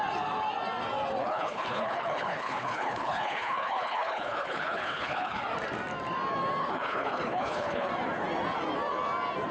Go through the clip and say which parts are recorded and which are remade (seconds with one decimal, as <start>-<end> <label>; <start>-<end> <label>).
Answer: 0.0-1.2 recorded; 1.2-5.4 remade; 5.4-6.6 recorded; 6.6-7.9 remade; 7.9-9.5 recorded